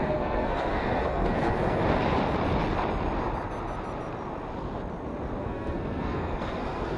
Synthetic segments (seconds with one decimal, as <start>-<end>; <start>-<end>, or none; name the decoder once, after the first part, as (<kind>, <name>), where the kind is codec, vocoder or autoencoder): 0.0-1.8 (codec, SNAC); 5.4-7.0

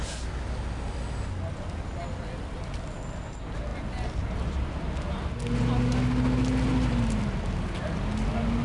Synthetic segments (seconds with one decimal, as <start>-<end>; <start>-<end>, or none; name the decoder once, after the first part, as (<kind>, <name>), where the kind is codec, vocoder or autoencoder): none

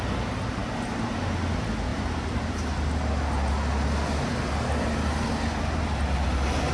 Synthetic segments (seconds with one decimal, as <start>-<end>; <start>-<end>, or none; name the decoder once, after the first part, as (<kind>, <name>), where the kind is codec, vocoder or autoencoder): none

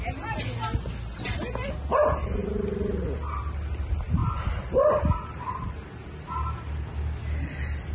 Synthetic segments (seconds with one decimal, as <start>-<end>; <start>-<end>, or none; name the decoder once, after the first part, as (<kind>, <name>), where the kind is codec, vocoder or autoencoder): none